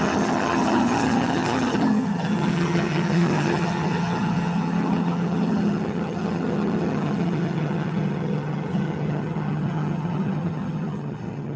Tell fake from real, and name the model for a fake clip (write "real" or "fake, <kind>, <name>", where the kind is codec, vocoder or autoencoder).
fake, vocoder, HiFi-GAN